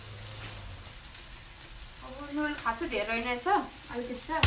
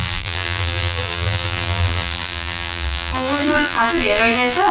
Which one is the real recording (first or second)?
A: first